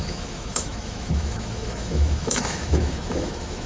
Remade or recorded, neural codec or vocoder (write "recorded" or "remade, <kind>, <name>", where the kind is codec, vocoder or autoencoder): remade, autoencoder, DAC-VAE